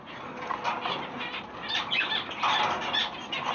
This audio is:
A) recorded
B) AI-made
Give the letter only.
A